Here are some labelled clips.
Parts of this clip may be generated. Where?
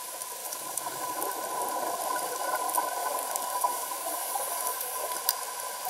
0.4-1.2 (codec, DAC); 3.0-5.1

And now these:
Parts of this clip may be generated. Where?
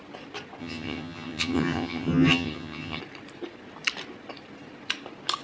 0.6-3.0 (vocoder, HiFi-GAN)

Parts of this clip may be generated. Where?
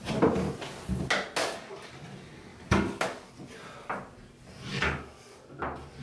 1.4-1.9 (codec, DAC); 2.5-3.3; 4.7-5.6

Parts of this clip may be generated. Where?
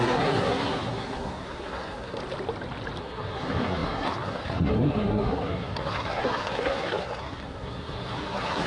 0.0-2.2 (codec, SNAC); 3.0-8.7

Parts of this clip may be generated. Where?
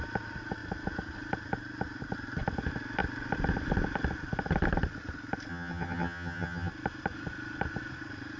5.5-6.7 (vocoder, HiFi-GAN)